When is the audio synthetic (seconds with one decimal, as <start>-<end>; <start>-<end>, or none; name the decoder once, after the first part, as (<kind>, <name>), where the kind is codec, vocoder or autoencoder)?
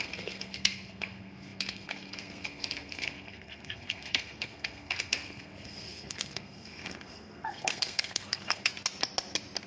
0.0-8.7 (codec, SNAC)